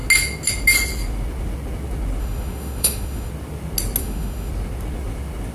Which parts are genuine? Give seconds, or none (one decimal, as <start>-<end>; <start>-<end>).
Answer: 0.0-2.2; 3.3-4.0; 4.5-5.5